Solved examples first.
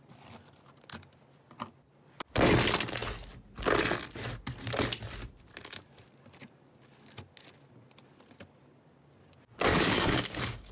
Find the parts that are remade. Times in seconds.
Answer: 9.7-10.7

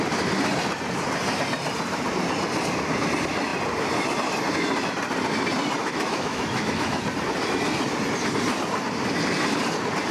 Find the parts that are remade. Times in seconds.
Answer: 5.8-7.0

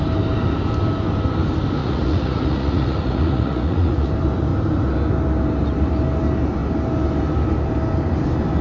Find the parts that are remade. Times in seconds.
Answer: 1.8-4.1

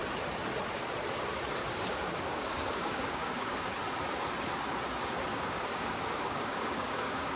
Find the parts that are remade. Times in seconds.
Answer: 1.6-3.7; 5.3-7.4

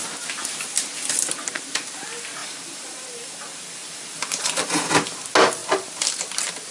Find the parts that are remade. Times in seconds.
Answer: 2.4-4.9